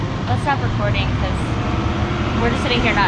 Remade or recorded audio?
recorded